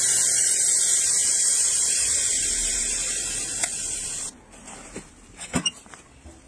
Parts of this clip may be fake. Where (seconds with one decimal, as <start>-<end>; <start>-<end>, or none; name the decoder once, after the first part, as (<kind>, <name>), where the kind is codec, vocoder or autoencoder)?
none